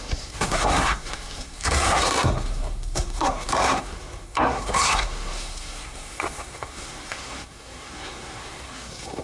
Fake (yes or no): yes